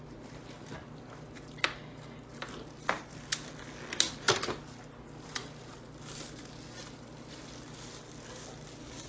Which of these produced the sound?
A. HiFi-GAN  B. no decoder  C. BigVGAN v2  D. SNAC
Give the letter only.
B